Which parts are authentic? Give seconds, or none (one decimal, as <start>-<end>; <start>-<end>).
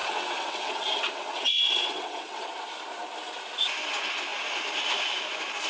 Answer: 2.5-5.7